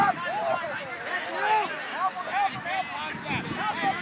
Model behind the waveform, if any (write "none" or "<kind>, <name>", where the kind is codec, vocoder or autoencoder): none